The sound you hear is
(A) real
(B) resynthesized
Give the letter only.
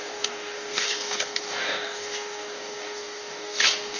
B